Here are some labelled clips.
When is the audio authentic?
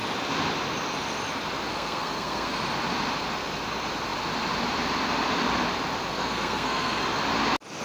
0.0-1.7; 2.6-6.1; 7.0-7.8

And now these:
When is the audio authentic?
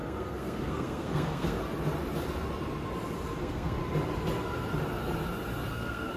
1.6-3.4; 3.8-5.7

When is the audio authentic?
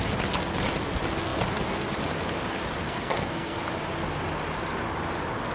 0.0-2.8; 3.6-5.5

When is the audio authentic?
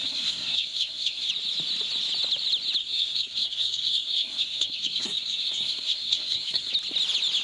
1.3-2.8; 6.7-7.4